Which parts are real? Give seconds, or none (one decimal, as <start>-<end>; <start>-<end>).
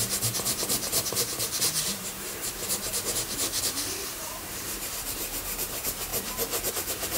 6.1-6.7